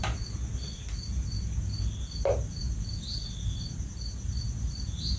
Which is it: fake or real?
real